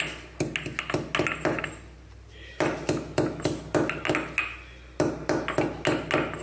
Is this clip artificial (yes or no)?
no